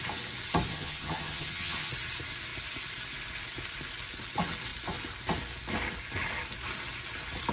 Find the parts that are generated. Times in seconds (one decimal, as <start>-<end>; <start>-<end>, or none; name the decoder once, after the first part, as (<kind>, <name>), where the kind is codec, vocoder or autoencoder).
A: 0.7-1.9 (vocoder, HiFi-GAN)